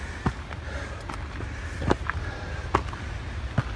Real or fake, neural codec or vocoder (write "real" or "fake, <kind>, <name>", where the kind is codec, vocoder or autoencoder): real